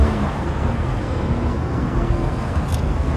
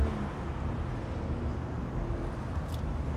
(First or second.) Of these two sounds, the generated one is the first